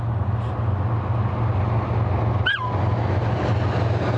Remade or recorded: recorded